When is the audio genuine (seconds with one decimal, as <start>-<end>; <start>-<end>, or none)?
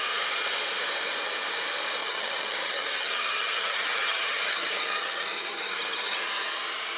0.0-2.0; 6.2-7.0